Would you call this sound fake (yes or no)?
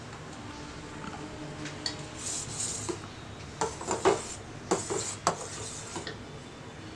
no